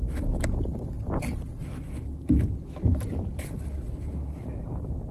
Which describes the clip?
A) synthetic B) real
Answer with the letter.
B